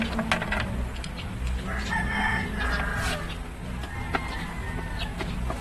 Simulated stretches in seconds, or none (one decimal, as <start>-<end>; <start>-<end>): none